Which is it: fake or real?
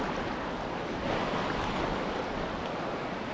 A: real